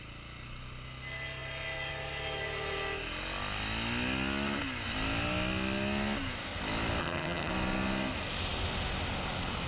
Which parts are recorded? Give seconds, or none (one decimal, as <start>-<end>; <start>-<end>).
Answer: 0.0-7.0; 7.5-9.7